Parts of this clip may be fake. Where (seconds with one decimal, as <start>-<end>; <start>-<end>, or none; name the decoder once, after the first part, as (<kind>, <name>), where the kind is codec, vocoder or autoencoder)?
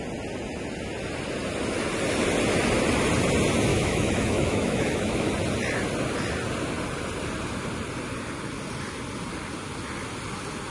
3.7-5.3 (autoencoder, DAC-VAE)